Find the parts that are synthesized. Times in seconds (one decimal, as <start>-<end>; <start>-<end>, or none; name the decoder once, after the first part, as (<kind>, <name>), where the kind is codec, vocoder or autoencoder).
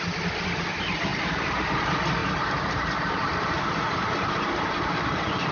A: 1.1-1.7 (vocoder, BigVGAN v2); 2.2-5.5